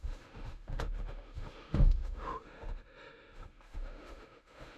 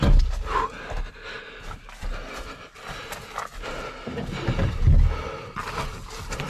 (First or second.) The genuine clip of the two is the second